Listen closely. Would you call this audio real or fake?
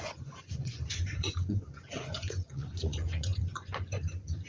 fake